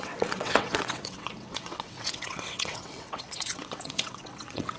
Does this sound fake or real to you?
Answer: fake